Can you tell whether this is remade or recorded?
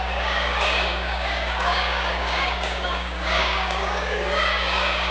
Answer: remade